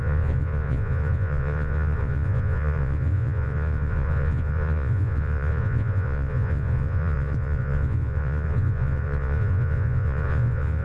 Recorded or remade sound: remade